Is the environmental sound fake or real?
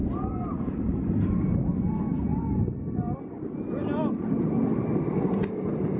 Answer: real